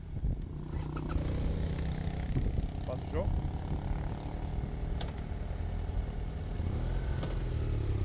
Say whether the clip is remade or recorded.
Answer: recorded